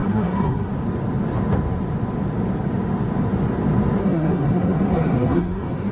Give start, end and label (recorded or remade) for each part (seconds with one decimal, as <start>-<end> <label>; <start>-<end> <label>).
0.0-0.7 remade; 0.7-4.0 recorded; 4.0-5.9 remade